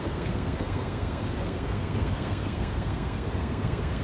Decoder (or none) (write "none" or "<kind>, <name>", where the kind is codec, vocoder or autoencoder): codec, SNAC